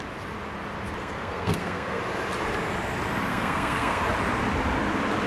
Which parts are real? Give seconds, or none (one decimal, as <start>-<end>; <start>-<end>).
0.0-1.0; 2.0-3.3; 4.0-5.3